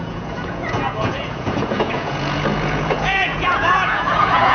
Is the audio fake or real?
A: fake